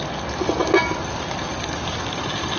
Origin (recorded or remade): recorded